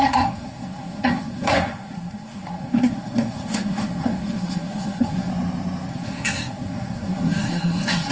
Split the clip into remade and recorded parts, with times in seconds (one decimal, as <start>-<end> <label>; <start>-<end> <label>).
0.0-5.3 remade; 5.3-5.9 recorded; 5.9-8.1 remade